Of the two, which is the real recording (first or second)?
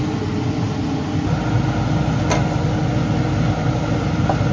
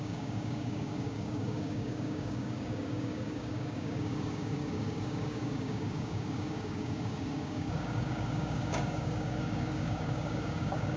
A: first